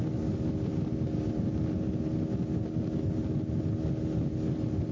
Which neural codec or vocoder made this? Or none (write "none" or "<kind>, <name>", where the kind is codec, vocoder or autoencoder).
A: none